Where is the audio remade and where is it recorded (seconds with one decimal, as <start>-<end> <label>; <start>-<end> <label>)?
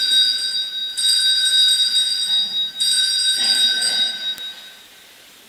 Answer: 0.0-5.5 recorded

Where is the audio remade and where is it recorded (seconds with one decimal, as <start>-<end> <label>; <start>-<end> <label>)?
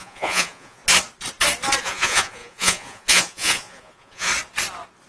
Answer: 0.0-0.8 remade; 0.8-1.8 recorded; 1.8-4.3 remade; 4.3-5.1 recorded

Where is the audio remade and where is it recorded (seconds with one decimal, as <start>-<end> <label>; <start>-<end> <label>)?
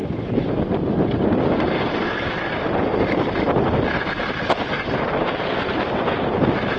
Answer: 0.0-6.8 recorded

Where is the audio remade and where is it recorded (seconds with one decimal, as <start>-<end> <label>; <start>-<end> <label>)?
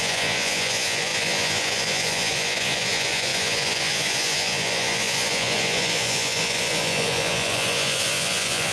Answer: 0.0-8.7 remade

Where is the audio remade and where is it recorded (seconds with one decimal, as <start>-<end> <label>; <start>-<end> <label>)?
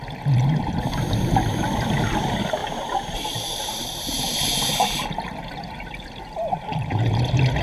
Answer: 0.0-2.6 recorded; 2.6-6.6 remade; 6.6-7.6 recorded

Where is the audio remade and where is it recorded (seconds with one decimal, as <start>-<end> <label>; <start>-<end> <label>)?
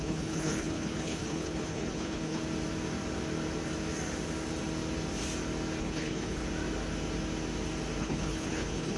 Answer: 0.0-2.4 remade; 2.4-5.8 recorded; 5.8-6.4 remade; 6.4-8.0 recorded; 8.0-9.0 remade